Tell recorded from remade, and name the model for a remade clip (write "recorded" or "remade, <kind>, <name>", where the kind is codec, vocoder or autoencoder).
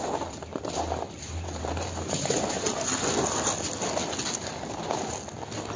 recorded